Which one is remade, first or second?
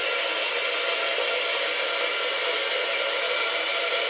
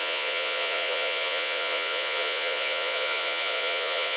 second